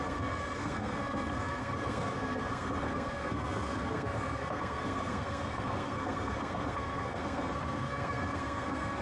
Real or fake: fake